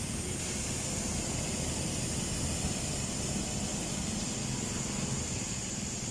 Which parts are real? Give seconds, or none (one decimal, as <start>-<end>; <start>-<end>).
0.0-6.1

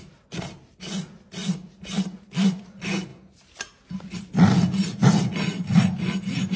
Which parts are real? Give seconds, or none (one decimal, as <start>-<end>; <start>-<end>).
0.0-6.6

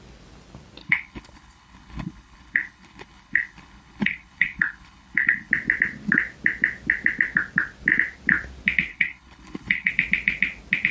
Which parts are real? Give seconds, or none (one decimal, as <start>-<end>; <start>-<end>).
0.0-0.8; 5.5-8.9; 9.9-10.9

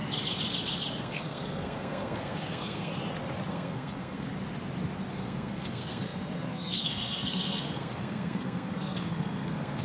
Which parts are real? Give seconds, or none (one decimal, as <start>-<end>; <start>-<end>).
0.0-0.9; 2.9-3.5; 4.3-5.1

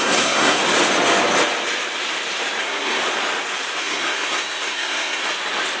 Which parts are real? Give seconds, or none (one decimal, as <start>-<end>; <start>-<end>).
0.6-2.6; 3.0-3.8; 5.2-5.8

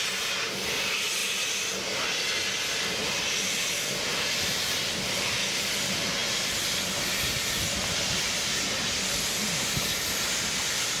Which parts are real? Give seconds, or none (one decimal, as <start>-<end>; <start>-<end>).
0.0-4.1; 4.6-11.0

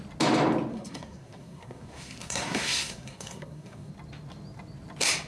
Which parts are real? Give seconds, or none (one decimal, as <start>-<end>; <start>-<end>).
0.0-0.7; 3.9-5.3

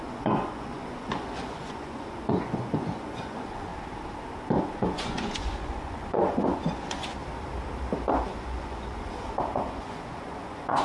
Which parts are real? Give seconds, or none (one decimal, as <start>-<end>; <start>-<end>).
3.7-4.6; 7.2-8.2